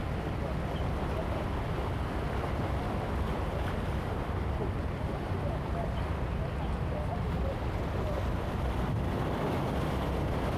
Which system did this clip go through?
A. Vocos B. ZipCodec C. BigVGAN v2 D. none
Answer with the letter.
D